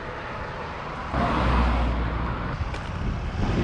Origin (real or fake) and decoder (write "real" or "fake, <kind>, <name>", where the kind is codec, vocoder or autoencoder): real